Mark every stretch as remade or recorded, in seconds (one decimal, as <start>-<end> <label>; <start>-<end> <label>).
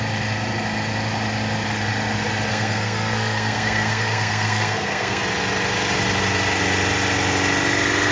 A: 0.0-2.5 recorded; 2.5-5.2 remade; 5.2-8.1 recorded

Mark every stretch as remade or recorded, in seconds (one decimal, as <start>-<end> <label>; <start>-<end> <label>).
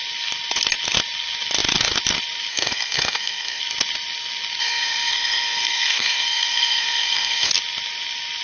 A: 0.0-2.5 recorded; 2.5-3.6 remade; 3.6-4.6 recorded; 4.6-7.5 remade; 7.5-8.4 recorded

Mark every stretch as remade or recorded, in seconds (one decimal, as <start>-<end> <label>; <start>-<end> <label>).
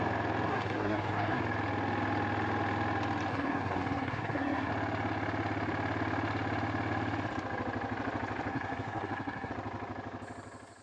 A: 0.0-0.5 recorded; 0.5-1.4 remade; 1.4-3.3 recorded; 3.3-4.7 remade; 4.7-8.5 recorded; 8.5-9.5 remade; 9.5-10.8 recorded